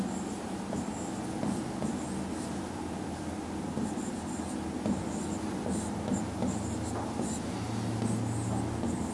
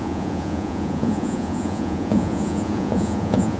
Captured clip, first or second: first